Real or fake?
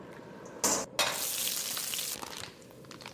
real